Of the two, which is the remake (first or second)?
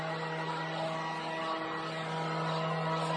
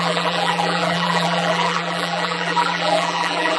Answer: second